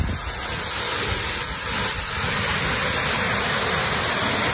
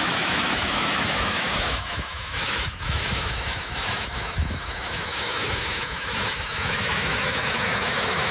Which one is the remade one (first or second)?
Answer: second